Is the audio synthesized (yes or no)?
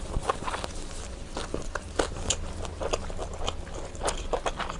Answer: no